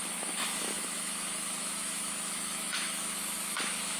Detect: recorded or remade remade